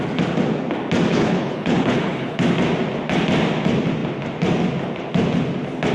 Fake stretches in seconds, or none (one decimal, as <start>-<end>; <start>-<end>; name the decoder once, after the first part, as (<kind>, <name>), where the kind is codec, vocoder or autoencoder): 1.1-2.4 (codec, HILCodec)